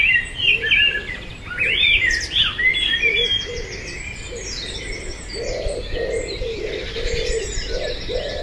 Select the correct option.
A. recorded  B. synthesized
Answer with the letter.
B